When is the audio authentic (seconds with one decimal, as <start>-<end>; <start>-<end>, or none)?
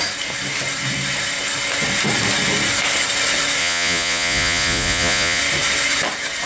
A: 0.0-3.6; 5.4-6.5